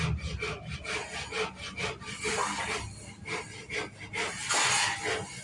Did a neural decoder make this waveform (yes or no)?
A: no